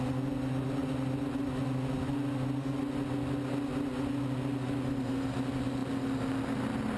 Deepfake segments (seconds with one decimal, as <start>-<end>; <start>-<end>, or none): none